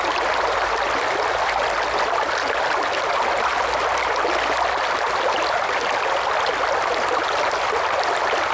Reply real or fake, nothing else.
real